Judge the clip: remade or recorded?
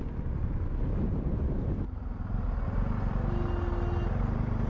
recorded